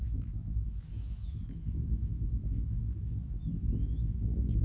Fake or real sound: fake